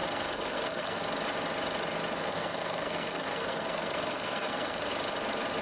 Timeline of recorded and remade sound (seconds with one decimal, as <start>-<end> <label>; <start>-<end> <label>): 0.0-1.0 remade; 1.0-2.2 recorded; 2.2-4.9 remade; 4.9-5.6 recorded